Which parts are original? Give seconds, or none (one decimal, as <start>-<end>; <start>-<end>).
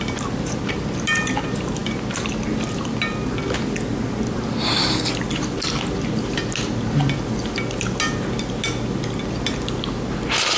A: 0.0-10.6